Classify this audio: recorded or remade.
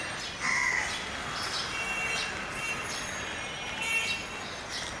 recorded